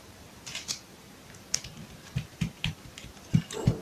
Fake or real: fake